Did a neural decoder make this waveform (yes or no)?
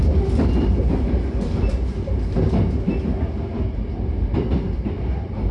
no